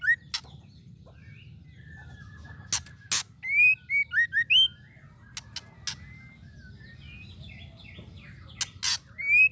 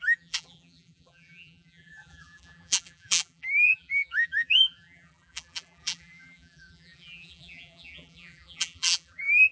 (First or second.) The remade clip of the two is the second